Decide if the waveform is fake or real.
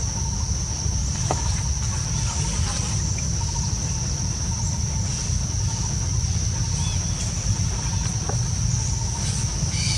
real